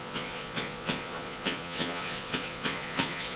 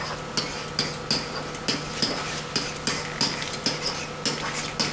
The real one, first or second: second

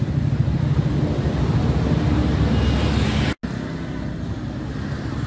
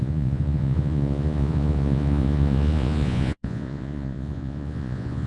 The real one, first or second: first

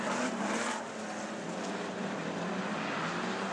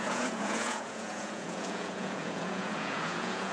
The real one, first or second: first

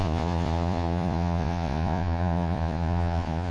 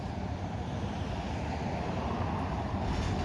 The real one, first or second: second